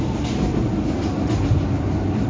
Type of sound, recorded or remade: recorded